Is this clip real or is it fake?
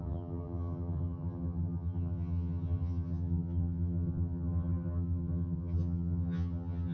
fake